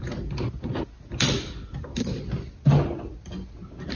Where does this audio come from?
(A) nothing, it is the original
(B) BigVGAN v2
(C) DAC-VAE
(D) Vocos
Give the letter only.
A